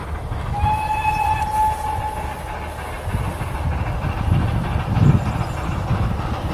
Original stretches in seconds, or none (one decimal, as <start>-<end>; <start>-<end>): 0.0-6.5